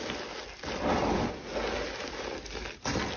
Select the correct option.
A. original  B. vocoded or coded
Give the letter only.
A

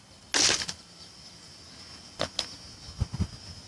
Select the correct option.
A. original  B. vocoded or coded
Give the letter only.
A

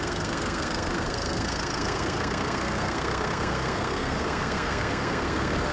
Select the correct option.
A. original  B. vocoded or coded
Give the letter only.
B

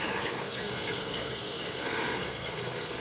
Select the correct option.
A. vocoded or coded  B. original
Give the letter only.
A